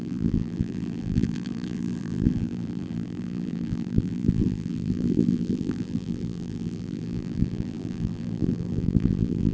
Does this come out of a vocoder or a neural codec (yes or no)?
yes